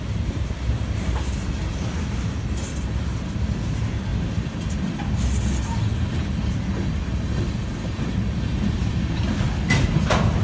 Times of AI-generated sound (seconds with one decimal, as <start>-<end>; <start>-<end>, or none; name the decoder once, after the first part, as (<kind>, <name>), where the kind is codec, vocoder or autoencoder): none